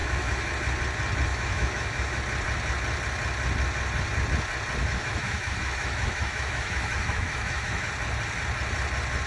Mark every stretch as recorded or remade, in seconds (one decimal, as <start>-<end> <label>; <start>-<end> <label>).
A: 0.0-0.5 remade; 0.5-1.3 recorded; 1.3-2.2 remade; 2.2-4.8 recorded; 4.8-7.9 remade; 7.9-9.3 recorded